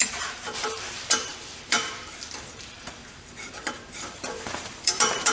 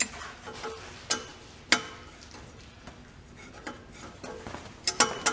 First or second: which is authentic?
second